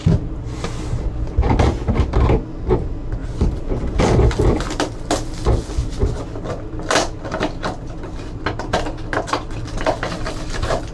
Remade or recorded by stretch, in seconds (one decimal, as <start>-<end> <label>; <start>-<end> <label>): 0.0-10.9 recorded